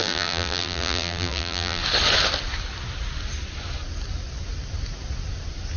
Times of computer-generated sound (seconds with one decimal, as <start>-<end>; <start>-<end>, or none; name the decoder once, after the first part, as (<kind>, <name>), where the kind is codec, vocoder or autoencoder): 0.0-1.8 (vocoder, BigVGAN v2)